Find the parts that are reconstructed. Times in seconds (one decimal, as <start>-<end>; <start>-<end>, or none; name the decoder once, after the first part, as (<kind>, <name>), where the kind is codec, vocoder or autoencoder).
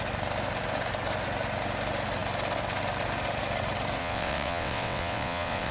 4.0-5.7 (vocoder, WaveNeXt)